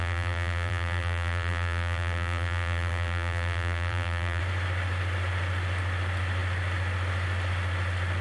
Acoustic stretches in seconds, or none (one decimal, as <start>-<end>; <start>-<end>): 4.4-8.2